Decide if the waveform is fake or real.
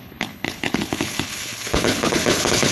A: fake